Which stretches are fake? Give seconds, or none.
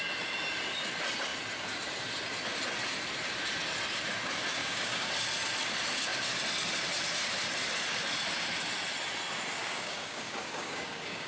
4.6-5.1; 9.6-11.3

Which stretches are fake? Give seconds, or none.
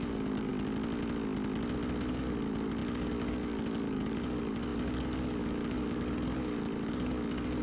0.0-0.5; 2.1-7.6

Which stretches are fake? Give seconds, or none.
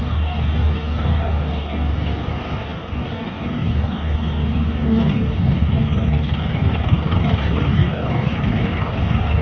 0.0-9.4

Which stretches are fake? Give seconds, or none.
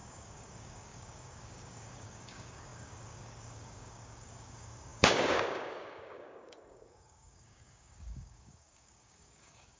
0.0-9.8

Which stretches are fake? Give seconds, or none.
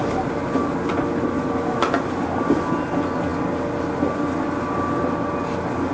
none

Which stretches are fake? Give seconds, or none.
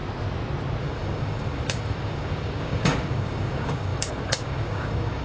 0.8-5.2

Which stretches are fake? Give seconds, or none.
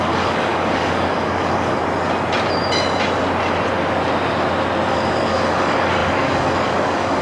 0.0-1.8; 4.9-7.2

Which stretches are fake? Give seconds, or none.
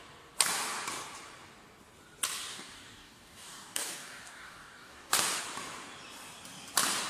2.5-5.2